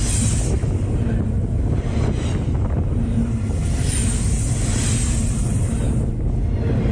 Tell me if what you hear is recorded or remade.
recorded